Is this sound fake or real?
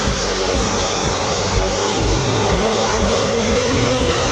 fake